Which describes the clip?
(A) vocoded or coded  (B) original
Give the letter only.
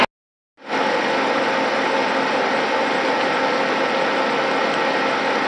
B